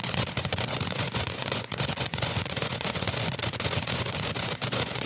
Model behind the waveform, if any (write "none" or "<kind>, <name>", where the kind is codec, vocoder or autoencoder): vocoder, Vocos